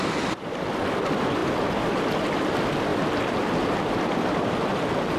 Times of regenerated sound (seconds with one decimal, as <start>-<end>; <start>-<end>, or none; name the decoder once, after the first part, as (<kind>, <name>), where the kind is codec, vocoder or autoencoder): none

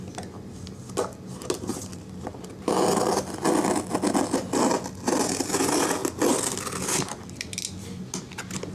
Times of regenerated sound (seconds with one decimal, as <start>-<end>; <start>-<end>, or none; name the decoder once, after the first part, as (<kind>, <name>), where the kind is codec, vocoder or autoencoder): none